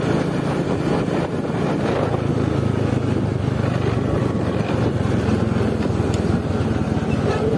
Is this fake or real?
real